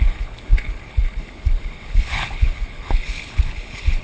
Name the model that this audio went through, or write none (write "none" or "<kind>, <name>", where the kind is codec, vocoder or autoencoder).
codec, HILCodec